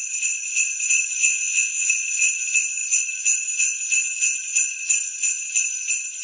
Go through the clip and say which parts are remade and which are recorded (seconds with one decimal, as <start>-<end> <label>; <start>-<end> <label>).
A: 0.0-1.2 recorded; 1.2-1.9 remade; 1.9-6.2 recorded